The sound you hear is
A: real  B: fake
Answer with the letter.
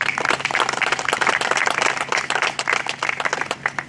A